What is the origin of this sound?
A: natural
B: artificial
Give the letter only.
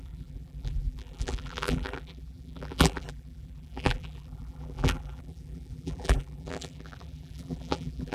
B